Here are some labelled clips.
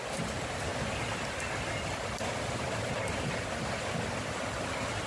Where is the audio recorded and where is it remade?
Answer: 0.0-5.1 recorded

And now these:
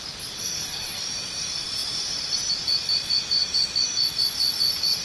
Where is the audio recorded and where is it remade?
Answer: 0.0-0.4 recorded; 0.4-1.0 remade; 1.0-5.0 recorded

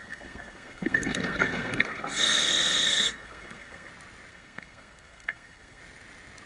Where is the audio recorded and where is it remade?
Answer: 0.0-3.9 remade; 3.9-4.3 recorded; 4.3-5.8 remade; 5.8-6.5 recorded

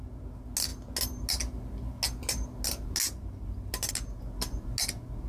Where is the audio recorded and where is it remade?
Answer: 0.0-5.3 recorded

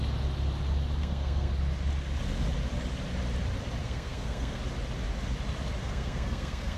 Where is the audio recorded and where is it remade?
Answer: 0.0-1.0 recorded; 1.0-1.5 remade; 1.5-3.8 recorded; 3.8-4.6 remade; 4.6-5.8 recorded; 5.8-6.8 remade

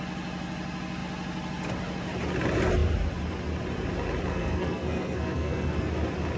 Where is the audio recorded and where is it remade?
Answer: 0.0-4.3 recorded; 4.3-5.9 remade; 5.9-6.4 recorded

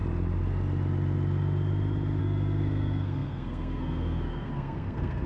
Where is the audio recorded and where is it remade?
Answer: 0.0-2.2 recorded; 2.2-5.3 remade